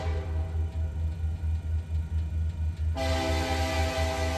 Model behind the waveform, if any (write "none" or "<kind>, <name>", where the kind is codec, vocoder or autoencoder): none